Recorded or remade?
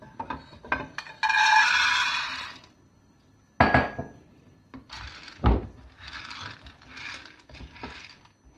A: recorded